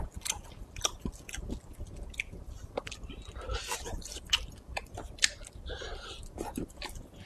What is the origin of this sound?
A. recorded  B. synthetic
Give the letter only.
A